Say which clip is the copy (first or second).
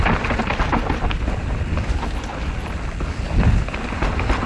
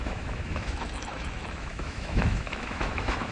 second